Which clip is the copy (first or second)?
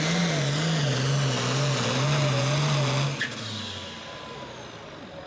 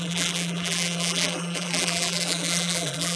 second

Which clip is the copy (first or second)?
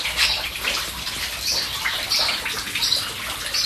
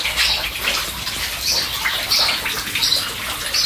first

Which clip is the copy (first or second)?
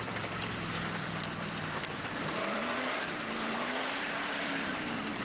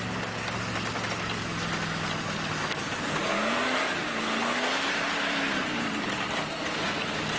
first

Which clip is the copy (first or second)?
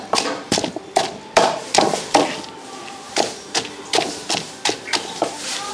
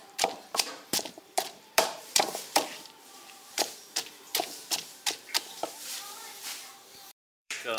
second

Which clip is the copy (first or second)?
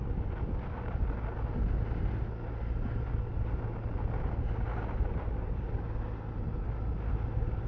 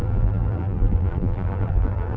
second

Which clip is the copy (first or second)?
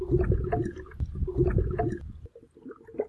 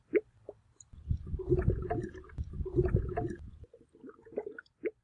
second